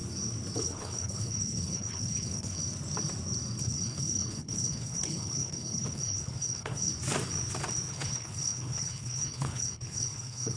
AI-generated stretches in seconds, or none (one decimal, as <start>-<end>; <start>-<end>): 0.6-2.6; 3.6-6.9; 7.9-10.6